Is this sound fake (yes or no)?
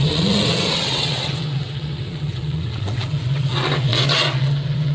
yes